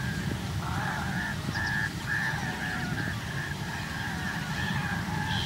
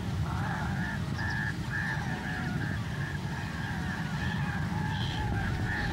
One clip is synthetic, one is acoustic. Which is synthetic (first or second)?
first